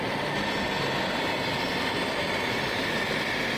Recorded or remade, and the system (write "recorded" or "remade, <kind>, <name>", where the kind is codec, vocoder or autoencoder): recorded